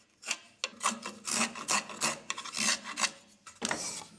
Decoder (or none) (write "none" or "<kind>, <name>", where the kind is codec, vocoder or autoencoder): none